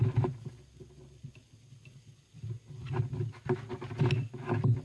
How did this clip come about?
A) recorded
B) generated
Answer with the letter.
A